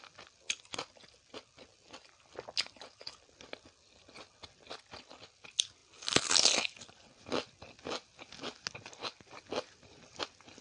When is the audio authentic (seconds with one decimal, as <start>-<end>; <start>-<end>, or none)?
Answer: 0.0-10.6

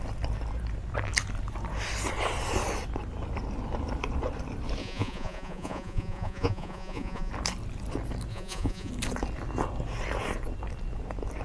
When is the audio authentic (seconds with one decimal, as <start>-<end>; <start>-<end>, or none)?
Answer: 0.0-4.8; 7.3-8.3; 8.9-11.4

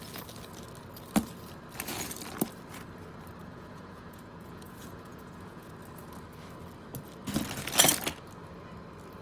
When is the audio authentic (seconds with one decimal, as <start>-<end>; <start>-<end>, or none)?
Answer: 0.0-3.4; 5.7-9.2

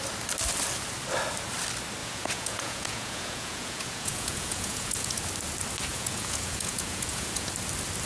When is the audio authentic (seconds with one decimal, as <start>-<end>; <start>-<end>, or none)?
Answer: 0.0-2.0; 5.2-5.9; 7.5-8.1

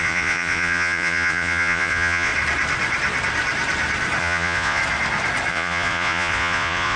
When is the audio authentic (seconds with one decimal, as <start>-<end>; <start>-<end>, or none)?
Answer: 2.3-4.2; 4.8-5.5

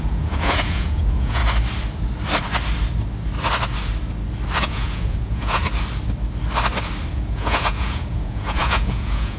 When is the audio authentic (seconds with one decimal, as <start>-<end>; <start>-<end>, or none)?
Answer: 1.4-4.6; 5.6-7.1